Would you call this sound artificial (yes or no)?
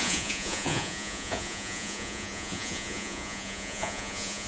yes